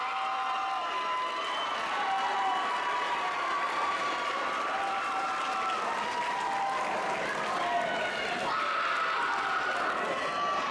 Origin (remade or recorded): recorded